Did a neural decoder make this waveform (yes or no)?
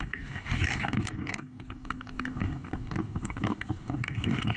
yes